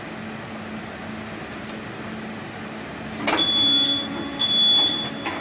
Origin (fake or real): real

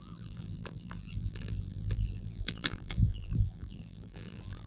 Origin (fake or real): fake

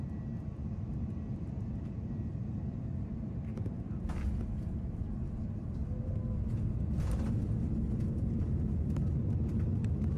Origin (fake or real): real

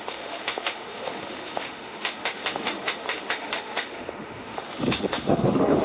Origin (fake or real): fake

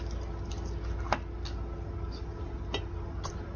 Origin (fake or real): real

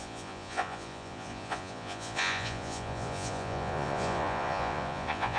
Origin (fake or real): fake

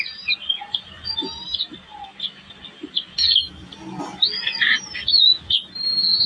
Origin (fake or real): real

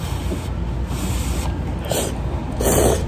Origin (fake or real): real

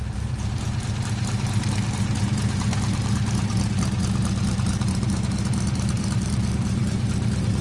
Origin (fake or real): fake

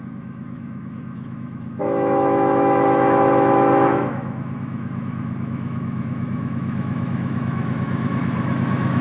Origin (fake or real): fake